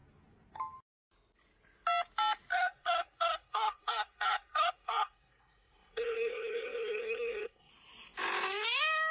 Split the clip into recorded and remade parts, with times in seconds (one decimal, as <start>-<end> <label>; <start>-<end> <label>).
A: 0.0-2.5 recorded; 2.5-7.7 remade; 7.7-9.1 recorded